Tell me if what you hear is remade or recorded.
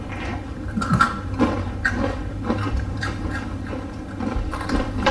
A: remade